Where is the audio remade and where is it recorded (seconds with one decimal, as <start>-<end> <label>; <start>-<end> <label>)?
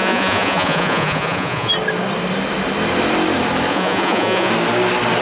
0.0-1.7 remade; 1.7-3.7 recorded; 3.7-4.5 remade; 4.5-5.2 recorded